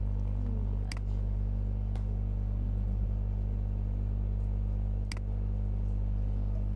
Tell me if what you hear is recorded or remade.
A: recorded